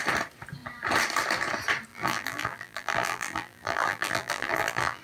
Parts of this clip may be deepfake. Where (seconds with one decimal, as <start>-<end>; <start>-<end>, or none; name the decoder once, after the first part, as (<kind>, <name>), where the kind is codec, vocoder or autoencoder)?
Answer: 1.9-5.0 (vocoder, BigVGAN v2)